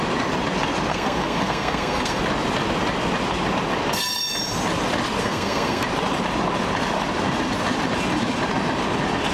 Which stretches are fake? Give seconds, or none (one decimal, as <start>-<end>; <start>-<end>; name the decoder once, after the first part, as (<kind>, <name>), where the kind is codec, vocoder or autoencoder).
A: 0.9-2.2 (codec, SNAC); 5.2-5.8